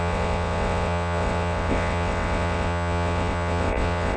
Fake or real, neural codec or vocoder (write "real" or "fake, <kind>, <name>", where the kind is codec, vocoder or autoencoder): fake, vocoder, WaveNeXt